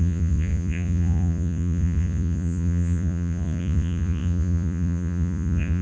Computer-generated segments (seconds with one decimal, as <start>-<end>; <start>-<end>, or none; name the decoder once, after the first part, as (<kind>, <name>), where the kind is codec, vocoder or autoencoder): 0.0-5.8 (vocoder, Vocos)